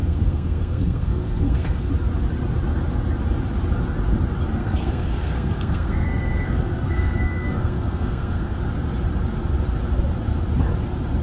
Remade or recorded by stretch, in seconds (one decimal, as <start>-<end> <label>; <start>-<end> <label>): 0.0-1.9 remade; 1.9-4.6 recorded; 4.6-8.6 remade; 8.6-11.2 recorded